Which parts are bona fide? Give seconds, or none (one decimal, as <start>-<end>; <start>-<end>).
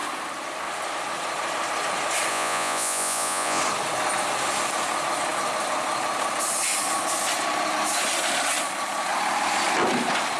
0.0-2.3; 3.6-10.4